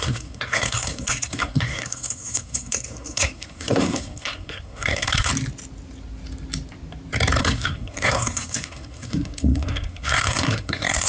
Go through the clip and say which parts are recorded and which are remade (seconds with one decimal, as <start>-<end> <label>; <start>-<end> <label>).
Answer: 0.0-5.3 remade; 5.3-7.4 recorded; 7.4-11.1 remade